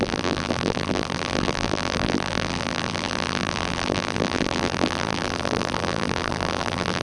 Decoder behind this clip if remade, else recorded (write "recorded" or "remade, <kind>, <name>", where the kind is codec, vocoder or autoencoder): remade, vocoder, BigVGAN v2